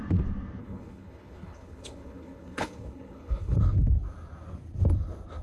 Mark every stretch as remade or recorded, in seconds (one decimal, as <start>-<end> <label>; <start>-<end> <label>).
0.0-0.6 recorded; 0.6-3.6 remade; 3.6-5.4 recorded